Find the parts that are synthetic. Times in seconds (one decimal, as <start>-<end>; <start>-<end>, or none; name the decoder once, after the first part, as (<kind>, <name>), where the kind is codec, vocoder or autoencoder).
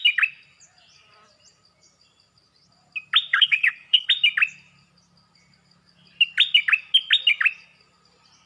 3.3-4.1 (codec, HILCodec)